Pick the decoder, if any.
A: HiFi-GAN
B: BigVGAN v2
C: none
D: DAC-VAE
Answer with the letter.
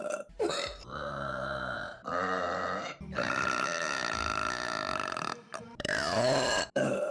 B